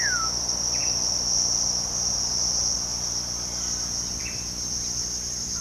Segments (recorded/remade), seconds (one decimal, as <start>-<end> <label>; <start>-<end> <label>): 0.0-5.6 recorded